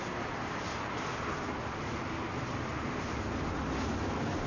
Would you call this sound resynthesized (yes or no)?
no